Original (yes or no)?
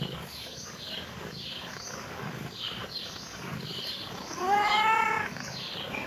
no